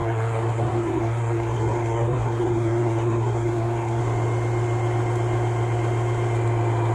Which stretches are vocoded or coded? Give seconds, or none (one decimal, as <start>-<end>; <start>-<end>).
0.0-4.0